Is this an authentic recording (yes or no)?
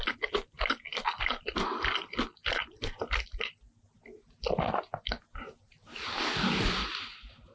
yes